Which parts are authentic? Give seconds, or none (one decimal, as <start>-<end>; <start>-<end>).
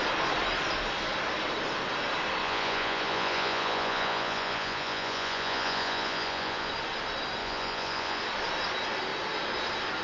0.0-2.4; 6.7-7.4; 8.2-10.0